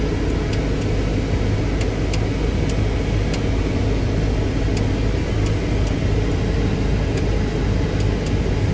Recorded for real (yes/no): yes